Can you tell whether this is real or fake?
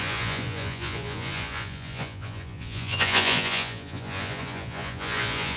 fake